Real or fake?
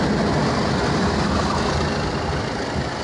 real